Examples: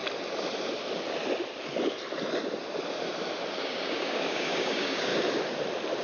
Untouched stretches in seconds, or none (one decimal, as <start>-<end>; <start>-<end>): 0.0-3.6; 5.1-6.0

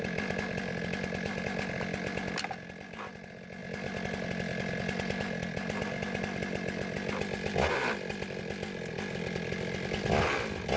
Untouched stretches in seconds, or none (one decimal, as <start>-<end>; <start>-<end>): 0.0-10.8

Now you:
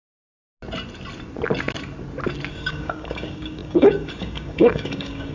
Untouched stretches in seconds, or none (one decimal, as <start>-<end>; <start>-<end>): 0.0-2.5

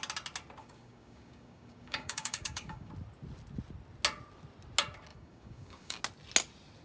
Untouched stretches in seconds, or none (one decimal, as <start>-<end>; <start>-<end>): 0.0-0.6; 2.9-5.1; 6.0-6.8

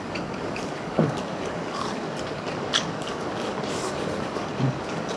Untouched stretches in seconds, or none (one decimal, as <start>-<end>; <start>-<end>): none